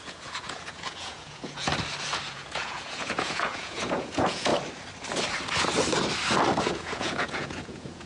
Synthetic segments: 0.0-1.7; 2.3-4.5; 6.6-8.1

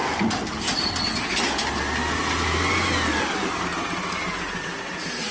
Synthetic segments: none

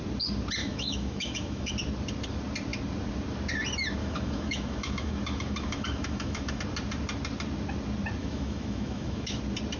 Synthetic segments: 0.6-1.7; 4.0-6.6; 8.2-9.4

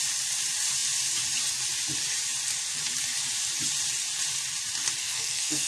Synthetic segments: 5.0-5.7

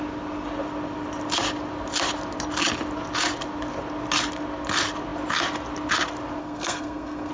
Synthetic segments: 6.4-7.3

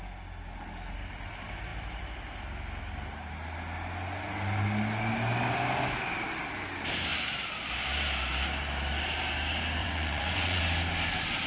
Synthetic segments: 9.8-10.6

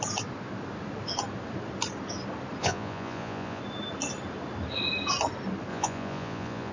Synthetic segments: 2.6-3.6; 5.7-6.7

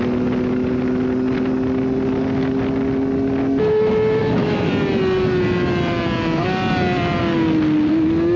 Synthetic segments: 4.2-4.7